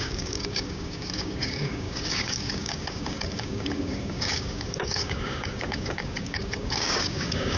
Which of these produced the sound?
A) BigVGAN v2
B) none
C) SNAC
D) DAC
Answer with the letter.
D